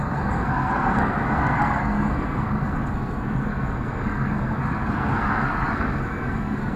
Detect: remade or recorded remade